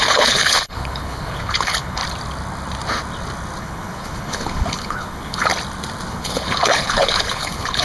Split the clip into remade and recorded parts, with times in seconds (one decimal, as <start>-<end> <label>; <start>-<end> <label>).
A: 0.0-2.0 remade; 2.0-3.6 recorded; 3.6-5.5 remade; 5.5-6.1 recorded; 6.1-7.8 remade